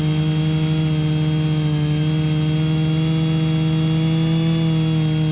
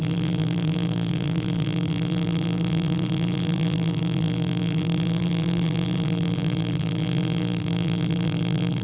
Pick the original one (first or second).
first